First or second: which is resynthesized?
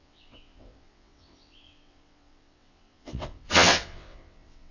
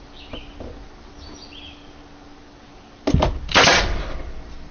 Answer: first